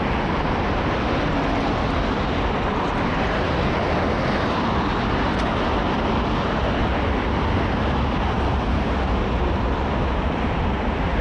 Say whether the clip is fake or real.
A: real